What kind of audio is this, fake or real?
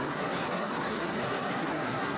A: fake